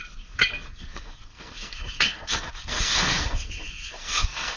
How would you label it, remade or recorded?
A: remade